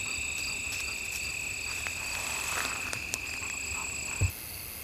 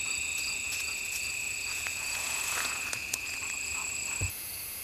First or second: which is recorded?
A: first